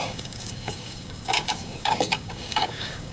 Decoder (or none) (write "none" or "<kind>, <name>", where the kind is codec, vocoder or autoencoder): codec, DAC